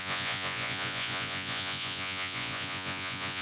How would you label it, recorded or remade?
remade